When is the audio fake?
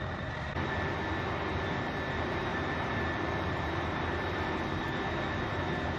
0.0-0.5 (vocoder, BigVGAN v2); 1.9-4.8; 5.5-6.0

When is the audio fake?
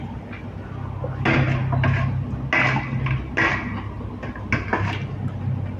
none